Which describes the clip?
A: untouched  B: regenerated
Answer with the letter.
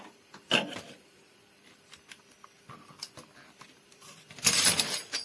B